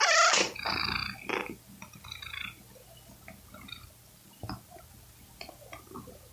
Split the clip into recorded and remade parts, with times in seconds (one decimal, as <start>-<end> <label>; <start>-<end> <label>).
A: 0.0-6.3 recorded